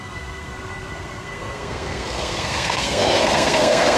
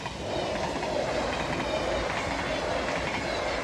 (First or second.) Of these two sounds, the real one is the second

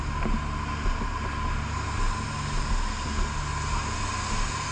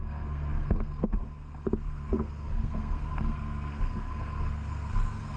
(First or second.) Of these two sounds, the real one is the first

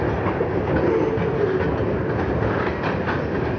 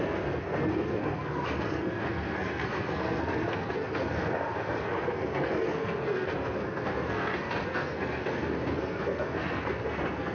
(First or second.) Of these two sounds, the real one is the first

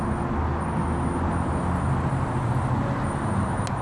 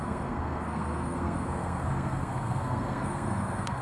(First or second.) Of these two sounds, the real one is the first